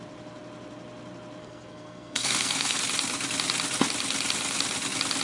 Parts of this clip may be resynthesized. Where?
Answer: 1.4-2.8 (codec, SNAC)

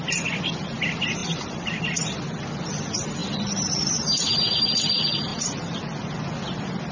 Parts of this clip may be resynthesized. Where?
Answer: 1.2-1.8 (vocoder, BigVGAN v2); 3.2-4.6; 5.3-5.8

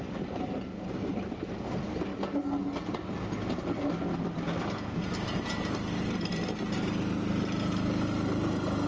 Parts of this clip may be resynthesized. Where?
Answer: none

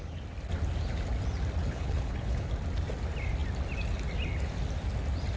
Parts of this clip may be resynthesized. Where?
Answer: 1.6-2.5 (codec, HILCodec)

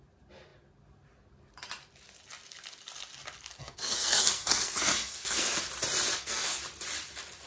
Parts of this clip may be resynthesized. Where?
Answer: 3.6-5.6 (codec, SNAC); 6.1-6.6